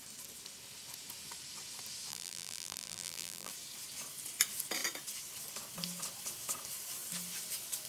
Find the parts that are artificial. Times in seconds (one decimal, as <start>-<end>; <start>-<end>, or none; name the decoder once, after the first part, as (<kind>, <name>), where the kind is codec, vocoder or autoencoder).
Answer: 2.1-3.5 (vocoder, BigVGAN v2)